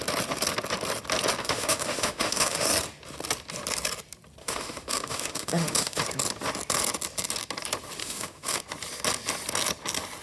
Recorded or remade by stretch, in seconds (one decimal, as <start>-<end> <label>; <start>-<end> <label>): 0.0-1.4 recorded; 1.4-2.7 remade; 2.7-4.4 recorded; 4.4-6.0 remade; 6.0-8.0 recorded; 8.0-8.6 remade; 8.6-10.2 recorded